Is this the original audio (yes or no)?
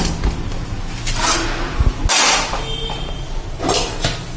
yes